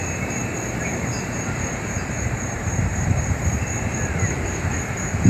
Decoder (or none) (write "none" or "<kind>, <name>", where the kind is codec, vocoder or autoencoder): vocoder, BigVGAN v2